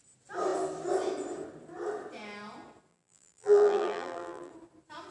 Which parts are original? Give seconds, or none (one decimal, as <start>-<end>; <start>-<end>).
0.0-2.9; 4.5-5.1